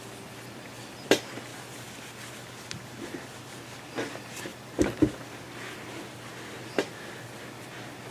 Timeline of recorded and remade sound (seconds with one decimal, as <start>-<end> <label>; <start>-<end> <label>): 0.0-8.1 recorded